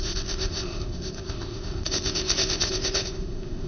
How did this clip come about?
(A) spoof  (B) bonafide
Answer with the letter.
A